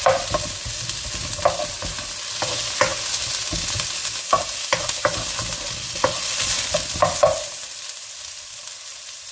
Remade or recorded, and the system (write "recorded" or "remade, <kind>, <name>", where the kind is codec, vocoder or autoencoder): recorded